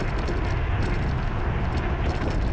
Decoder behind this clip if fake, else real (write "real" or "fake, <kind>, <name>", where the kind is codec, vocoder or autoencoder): real